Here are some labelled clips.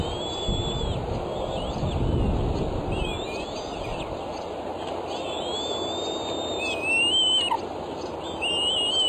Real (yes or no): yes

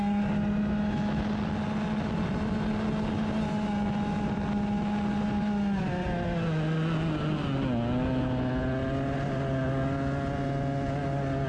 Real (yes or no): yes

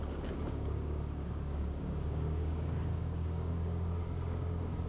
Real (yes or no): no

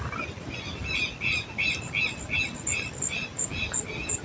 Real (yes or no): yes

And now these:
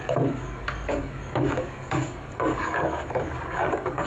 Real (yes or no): no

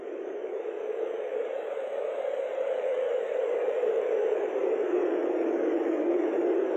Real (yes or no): no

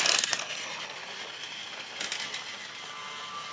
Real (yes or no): yes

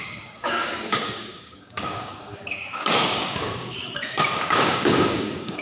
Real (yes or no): no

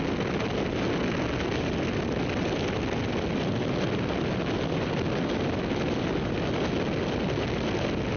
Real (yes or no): yes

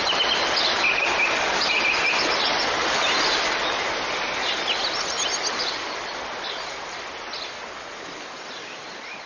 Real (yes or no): yes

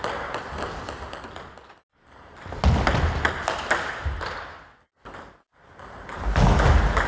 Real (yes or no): yes